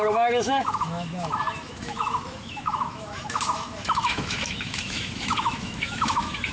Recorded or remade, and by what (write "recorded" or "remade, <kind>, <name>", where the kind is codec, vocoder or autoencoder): remade, autoencoder, DAC-VAE